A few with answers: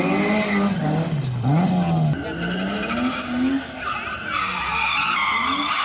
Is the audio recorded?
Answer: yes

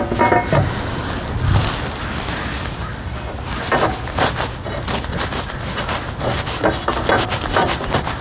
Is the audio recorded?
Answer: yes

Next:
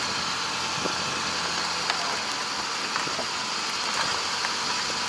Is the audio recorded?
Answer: yes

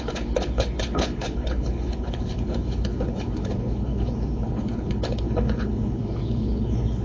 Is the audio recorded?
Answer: no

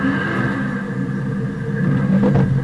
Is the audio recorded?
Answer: yes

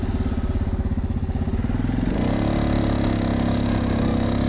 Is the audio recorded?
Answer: yes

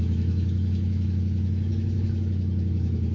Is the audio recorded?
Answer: no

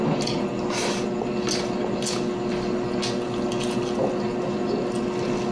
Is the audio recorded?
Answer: yes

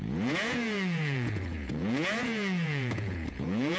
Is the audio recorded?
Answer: no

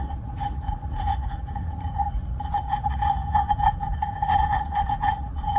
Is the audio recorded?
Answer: no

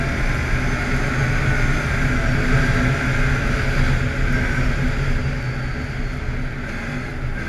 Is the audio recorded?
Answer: yes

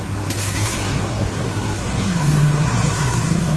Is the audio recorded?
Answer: no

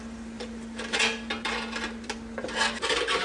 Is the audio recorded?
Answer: yes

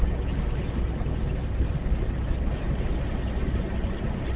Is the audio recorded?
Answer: yes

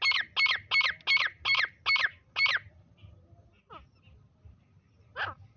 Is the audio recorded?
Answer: yes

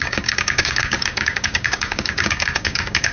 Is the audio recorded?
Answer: no